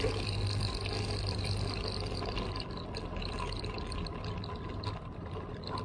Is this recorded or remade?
recorded